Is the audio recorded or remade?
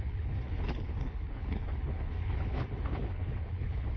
remade